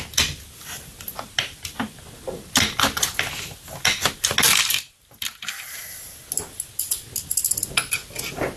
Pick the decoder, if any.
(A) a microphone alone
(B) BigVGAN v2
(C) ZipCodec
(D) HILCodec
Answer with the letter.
A